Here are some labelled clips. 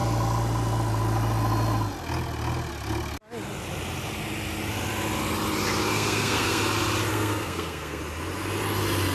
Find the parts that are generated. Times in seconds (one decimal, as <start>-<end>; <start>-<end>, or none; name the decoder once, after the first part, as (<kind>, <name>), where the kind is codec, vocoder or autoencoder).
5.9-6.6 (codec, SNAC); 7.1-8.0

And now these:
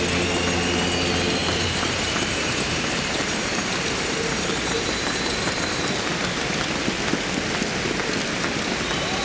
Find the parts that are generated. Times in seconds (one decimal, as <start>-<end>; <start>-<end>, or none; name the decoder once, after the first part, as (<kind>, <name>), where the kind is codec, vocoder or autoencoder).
1.4-5.8 (vocoder, BigVGAN v2)

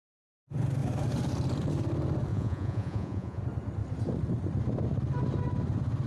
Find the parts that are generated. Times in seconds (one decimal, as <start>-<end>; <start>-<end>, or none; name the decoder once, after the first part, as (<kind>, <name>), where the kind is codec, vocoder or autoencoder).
2.3-3.4 (vocoder, Vocos)

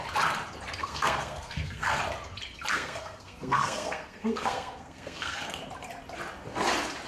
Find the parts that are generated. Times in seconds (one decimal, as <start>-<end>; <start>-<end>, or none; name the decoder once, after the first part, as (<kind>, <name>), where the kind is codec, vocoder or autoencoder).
0.8-2.0 (codec, SNAC); 2.7-5.6